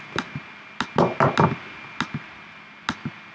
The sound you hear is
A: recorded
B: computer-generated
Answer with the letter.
A